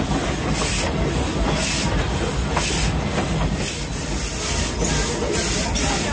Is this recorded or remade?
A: recorded